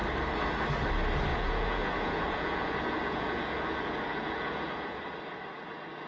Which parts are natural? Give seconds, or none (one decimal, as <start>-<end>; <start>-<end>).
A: 0.0-1.3; 5.0-6.1